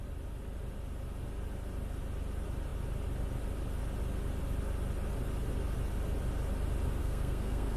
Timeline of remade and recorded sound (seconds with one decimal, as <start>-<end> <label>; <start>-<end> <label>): 0.0-7.0 recorded; 7.0-7.8 remade

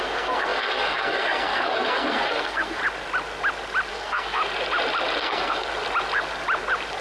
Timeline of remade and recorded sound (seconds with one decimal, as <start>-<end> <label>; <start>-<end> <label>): 0.0-2.8 remade; 2.8-3.9 recorded; 3.9-4.4 remade; 4.4-5.2 recorded; 5.2-5.7 remade; 5.7-7.0 recorded